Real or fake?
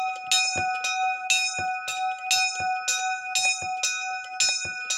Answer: real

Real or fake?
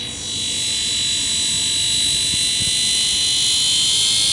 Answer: real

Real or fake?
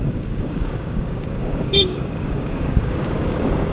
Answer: fake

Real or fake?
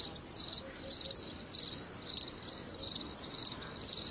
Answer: real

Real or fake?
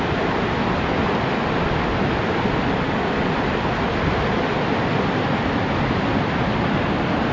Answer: real